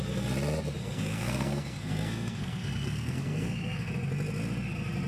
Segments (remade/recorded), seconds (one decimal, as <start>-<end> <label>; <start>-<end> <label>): 0.0-0.8 recorded; 0.8-3.9 remade; 3.9-5.1 recorded